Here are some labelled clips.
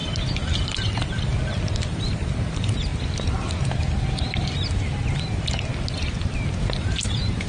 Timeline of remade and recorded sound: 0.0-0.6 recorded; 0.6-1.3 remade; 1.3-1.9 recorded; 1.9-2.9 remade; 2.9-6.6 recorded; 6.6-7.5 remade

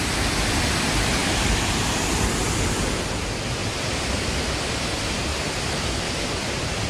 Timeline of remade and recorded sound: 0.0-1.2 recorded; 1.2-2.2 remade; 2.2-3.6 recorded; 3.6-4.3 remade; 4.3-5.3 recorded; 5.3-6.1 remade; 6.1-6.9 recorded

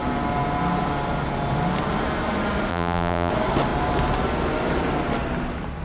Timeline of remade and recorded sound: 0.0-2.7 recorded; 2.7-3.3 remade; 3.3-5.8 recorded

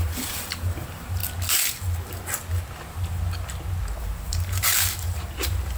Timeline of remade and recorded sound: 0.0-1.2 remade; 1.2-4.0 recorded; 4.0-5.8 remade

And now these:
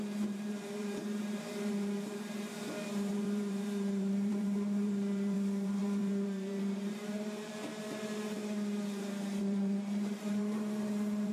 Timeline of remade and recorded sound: 0.0-11.3 remade

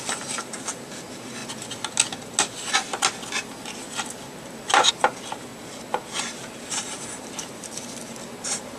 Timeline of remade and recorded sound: 0.0-1.4 remade; 1.4-4.9 recorded; 4.9-5.5 remade; 5.5-6.1 recorded; 6.1-8.8 remade

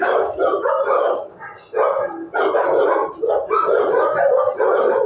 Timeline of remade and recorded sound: 0.0-0.4 recorded; 0.4-1.2 remade; 1.2-3.0 recorded; 3.0-4.6 remade; 4.6-5.1 recorded